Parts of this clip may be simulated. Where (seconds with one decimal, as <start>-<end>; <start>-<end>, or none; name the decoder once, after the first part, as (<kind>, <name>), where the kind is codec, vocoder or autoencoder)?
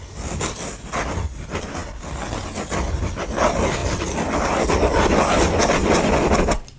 none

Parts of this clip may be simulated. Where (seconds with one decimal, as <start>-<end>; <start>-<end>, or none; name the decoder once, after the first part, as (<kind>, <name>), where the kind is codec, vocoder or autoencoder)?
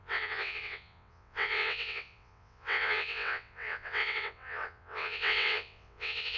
0.0-6.4 (vocoder, WaveNeXt)